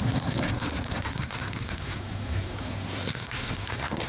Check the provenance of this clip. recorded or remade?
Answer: remade